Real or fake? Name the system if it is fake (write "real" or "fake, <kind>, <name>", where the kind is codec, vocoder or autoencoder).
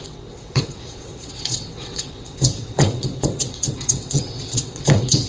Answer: fake, vocoder, WaveNeXt